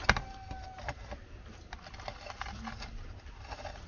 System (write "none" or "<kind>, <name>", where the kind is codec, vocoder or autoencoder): none